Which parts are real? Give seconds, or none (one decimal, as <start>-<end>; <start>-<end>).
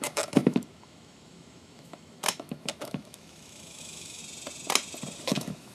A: 4.2-5.2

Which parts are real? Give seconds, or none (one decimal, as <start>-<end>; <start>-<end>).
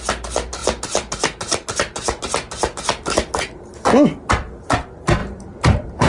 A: 0.0-5.2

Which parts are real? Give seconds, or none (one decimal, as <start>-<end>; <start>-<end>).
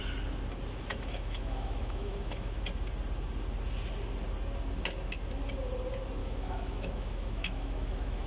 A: 0.0-0.9; 2.6-6.2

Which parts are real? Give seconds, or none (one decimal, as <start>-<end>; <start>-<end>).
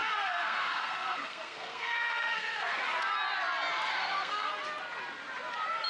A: 2.8-3.9; 4.5-5.9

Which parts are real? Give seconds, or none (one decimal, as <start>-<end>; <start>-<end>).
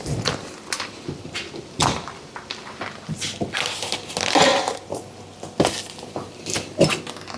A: 0.0-7.4